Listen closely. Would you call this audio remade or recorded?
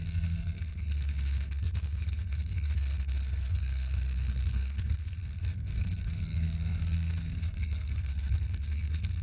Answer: remade